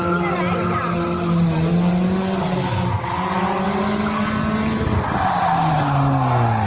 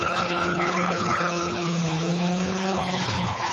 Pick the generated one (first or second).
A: second